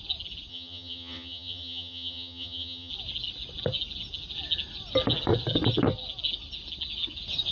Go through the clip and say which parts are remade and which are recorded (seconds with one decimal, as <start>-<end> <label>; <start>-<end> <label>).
0.0-0.5 recorded; 0.5-2.9 remade; 2.9-7.5 recorded